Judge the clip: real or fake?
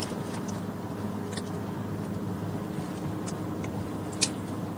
real